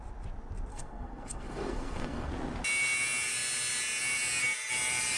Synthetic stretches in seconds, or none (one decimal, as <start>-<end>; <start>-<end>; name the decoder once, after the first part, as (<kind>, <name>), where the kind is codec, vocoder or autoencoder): 0.7-2.3 (codec, SNAC)